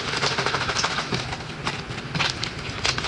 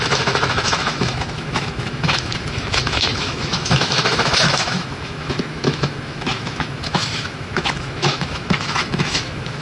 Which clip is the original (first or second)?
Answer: first